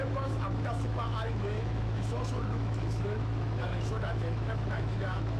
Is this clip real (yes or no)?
no